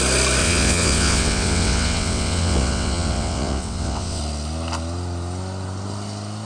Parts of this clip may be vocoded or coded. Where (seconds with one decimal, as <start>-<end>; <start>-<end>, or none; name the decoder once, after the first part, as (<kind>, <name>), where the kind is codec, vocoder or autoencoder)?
0.4-4.2 (vocoder, WaveNeXt)

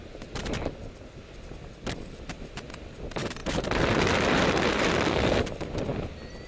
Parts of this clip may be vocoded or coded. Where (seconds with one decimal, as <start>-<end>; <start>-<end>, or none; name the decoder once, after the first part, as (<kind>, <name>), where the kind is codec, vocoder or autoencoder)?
none

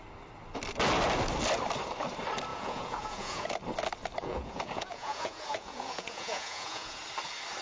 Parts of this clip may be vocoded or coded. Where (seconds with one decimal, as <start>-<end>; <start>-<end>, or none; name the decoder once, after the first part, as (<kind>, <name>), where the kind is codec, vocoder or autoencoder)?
2.5-3.5 (vocoder, Vocos); 4.2-7.0

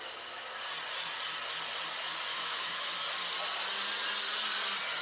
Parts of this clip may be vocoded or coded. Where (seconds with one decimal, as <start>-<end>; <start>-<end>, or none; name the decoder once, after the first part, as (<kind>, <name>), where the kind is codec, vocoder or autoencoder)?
2.3-2.9 (autoencoder, DAC-VAE)

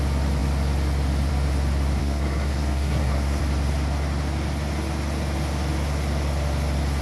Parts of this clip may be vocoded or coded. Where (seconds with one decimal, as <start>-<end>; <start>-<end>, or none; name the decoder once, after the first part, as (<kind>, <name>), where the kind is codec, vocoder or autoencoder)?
2.0-3.4 (codec, SNAC)

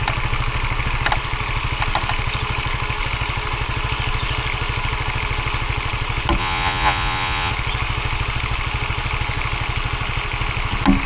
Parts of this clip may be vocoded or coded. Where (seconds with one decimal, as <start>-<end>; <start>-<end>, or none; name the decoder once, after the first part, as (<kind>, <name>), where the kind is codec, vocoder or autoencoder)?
6.4-7.5 (vocoder, Vocos)

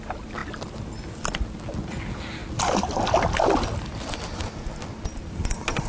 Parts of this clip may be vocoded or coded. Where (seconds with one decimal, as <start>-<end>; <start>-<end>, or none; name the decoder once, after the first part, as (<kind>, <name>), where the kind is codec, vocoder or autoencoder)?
none